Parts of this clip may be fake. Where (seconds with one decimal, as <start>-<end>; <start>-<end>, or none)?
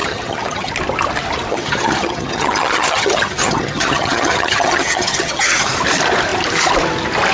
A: 0.0-0.7; 1.5-5.7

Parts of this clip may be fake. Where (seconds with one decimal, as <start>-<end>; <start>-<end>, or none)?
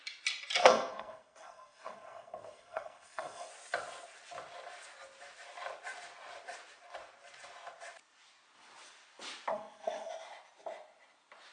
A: 0.6-3.5; 9.5-10.1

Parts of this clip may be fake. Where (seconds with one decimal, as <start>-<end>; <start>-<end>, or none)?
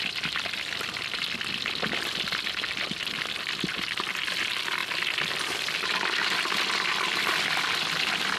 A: none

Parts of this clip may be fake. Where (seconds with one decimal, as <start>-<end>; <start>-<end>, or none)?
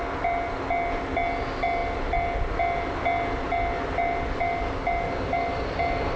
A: none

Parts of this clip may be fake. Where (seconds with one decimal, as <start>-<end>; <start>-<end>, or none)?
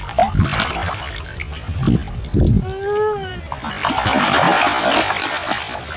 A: none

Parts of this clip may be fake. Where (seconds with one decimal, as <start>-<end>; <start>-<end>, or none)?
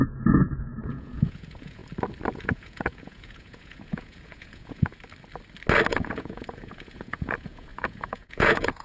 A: 0.0-1.8; 2.3-4.9; 5.9-8.8